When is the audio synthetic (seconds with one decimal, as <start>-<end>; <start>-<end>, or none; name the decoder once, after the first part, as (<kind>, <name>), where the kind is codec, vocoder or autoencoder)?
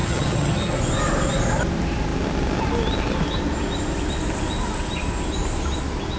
0.0-0.8 (vocoder, HiFi-GAN)